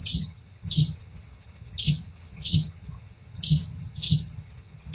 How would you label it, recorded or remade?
remade